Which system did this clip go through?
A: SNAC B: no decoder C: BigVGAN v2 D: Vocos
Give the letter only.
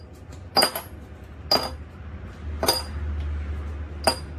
B